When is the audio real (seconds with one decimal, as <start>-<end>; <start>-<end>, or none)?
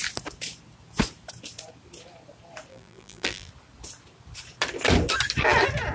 0.0-2.7; 3.5-5.9